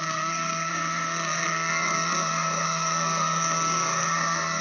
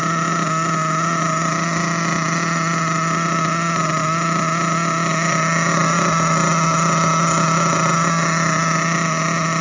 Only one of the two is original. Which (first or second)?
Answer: second